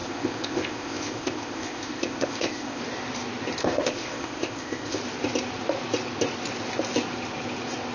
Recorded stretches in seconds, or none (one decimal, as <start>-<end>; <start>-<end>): 2.8-3.6; 5.0-7.9